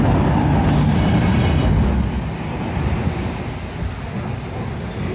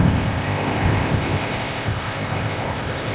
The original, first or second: first